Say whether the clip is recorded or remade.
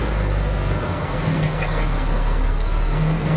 remade